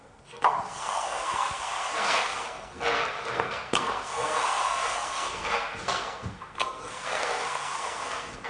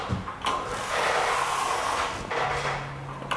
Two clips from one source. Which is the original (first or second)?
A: second